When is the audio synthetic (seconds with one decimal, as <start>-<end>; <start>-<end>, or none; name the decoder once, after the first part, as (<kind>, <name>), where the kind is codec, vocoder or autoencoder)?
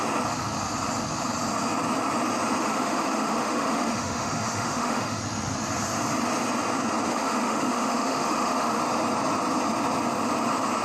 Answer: 2.6-5.2 (autoencoder, DAC-VAE); 7.1-8.8